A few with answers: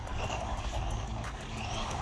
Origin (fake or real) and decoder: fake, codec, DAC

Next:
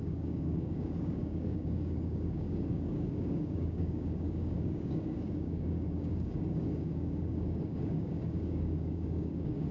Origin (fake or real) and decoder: fake, codec, DAC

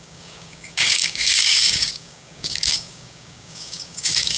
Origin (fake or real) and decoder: fake, codec, DAC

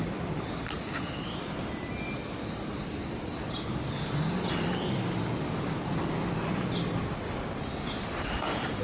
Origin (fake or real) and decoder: real